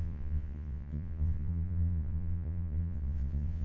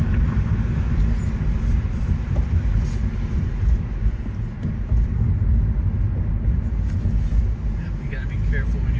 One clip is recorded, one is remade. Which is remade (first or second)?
first